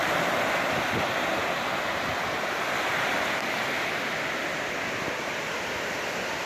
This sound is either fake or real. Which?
real